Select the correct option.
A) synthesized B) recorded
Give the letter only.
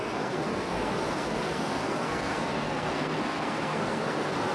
A